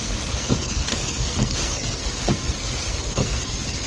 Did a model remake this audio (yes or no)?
yes